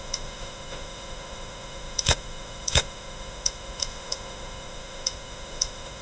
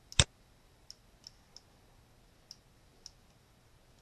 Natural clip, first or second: second